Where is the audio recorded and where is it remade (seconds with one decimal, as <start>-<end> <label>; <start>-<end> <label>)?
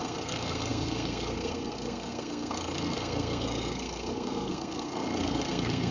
0.0-5.9 remade